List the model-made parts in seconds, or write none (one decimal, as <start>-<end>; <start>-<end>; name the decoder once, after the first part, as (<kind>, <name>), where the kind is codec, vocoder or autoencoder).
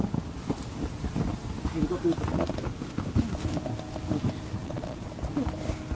4.6-5.1 (vocoder, Vocos)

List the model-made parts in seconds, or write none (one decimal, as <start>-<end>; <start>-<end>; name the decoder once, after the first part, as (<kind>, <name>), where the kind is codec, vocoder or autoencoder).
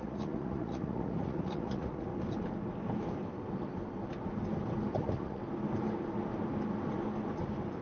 0.0-2.1 (vocoder, Vocos); 4.9-5.4